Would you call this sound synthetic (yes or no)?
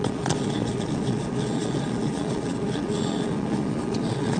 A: yes